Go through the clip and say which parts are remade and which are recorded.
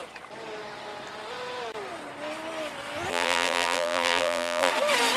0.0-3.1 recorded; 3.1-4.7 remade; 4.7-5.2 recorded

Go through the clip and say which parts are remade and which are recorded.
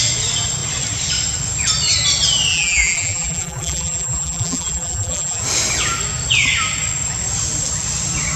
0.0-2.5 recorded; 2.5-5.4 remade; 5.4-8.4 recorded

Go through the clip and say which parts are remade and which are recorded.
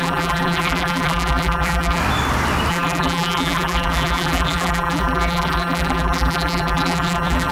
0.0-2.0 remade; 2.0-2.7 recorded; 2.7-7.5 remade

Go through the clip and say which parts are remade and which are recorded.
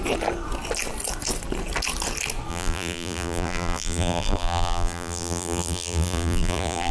0.0-2.5 recorded; 2.5-6.9 remade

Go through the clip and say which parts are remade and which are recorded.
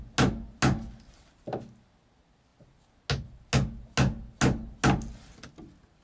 0.0-6.0 recorded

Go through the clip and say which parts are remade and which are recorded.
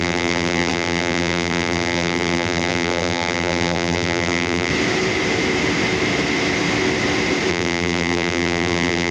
0.0-4.7 remade; 4.7-7.5 recorded; 7.5-9.1 remade